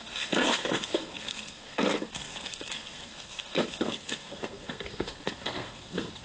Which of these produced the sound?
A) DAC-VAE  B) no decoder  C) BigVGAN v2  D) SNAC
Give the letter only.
D